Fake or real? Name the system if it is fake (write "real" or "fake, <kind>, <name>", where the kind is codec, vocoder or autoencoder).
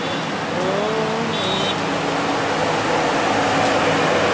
real